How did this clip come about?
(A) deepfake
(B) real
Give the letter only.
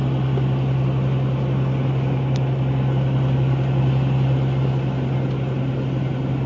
B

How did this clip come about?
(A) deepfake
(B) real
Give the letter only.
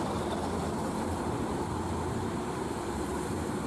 A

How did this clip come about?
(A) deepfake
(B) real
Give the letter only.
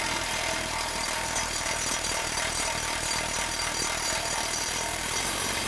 A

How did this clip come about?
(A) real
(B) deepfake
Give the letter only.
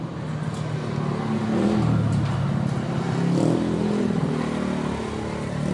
A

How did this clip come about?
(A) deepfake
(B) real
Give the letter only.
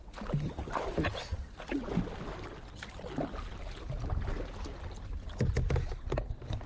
B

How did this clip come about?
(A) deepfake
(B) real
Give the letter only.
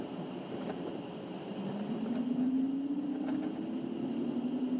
B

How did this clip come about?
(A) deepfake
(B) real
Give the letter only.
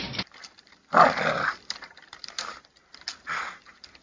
A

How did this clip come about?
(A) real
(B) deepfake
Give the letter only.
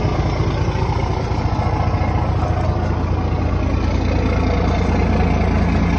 A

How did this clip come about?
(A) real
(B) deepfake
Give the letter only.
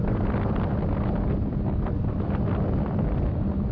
B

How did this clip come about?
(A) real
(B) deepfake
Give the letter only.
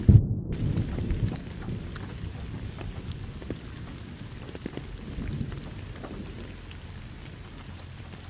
A